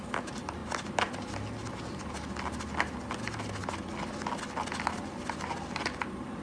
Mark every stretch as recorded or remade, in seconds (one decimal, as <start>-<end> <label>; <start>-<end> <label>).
0.0-6.4 recorded